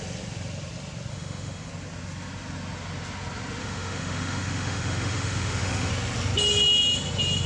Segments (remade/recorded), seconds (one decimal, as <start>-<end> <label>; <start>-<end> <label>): 0.0-1.1 recorded; 1.1-1.7 remade; 1.7-3.6 recorded; 3.6-5.9 remade; 5.9-7.5 recorded